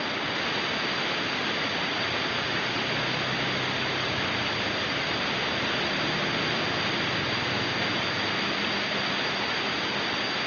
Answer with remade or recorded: recorded